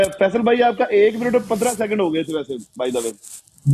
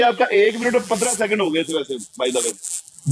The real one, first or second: first